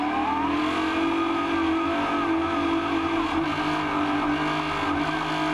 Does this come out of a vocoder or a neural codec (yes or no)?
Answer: no